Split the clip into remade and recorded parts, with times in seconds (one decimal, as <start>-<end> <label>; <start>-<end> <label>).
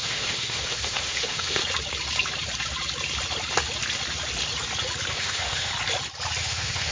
0.0-1.6 remade; 1.6-5.1 recorded; 5.1-5.7 remade; 5.7-6.4 recorded; 6.4-6.9 remade